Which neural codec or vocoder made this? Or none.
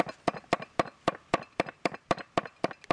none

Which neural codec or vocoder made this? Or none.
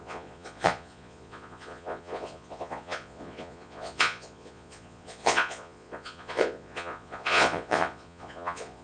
vocoder, Vocos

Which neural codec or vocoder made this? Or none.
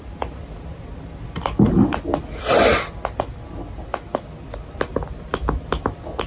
none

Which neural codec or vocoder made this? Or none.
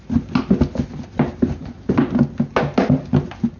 none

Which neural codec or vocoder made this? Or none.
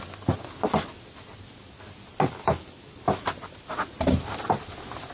none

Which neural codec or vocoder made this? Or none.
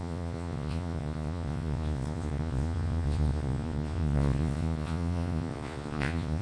vocoder, Vocos